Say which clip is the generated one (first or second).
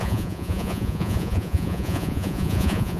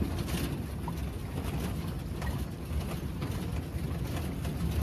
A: first